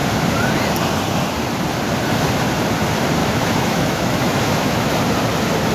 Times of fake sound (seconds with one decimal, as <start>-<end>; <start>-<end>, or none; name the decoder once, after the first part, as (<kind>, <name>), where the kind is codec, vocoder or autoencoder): 3.2-4.9 (autoencoder, DAC-VAE)